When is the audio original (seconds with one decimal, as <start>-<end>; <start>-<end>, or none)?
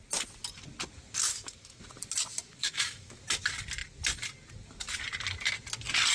0.0-1.3; 1.8-2.6; 3.2-6.1